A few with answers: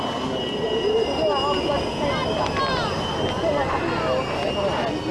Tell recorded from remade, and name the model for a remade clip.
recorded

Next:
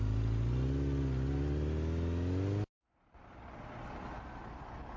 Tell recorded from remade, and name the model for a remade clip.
recorded